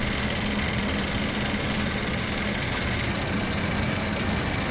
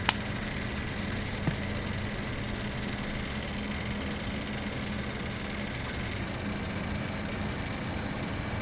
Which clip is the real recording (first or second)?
second